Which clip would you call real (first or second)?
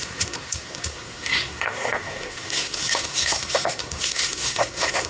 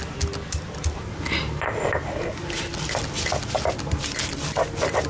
second